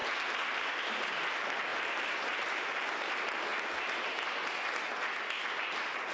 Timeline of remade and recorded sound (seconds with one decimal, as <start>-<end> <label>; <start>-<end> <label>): 0.0-1.7 recorded; 1.7-3.1 remade; 3.1-6.1 recorded